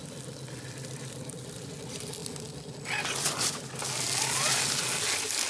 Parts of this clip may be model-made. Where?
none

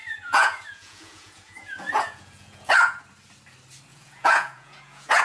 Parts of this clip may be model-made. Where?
0.0-3.0 (vocoder, Vocos); 3.9-5.2

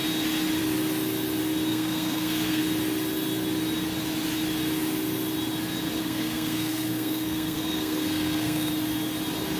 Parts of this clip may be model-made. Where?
1.7-2.6 (codec, SNAC); 6.0-8.7

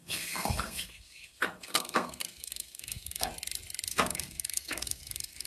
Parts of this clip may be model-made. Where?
0.0-3.3 (codec, SNAC); 3.9-5.5

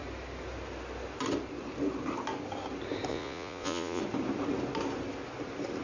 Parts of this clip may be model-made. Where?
3.1-4.0 (vocoder, Vocos)

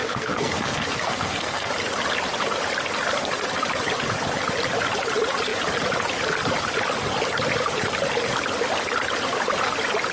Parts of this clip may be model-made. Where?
0.0-1.7 (codec, SNAC)

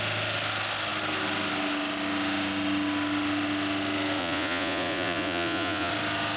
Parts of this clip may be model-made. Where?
4.2-5.9 (vocoder, Vocos)